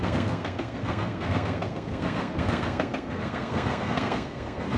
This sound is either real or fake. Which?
fake